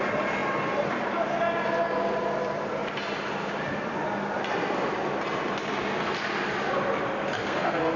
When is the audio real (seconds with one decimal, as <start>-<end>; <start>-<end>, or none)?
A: 0.0-7.4